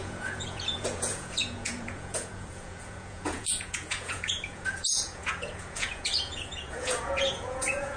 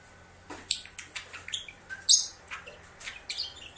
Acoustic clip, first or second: second